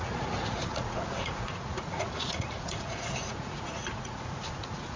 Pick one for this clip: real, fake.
fake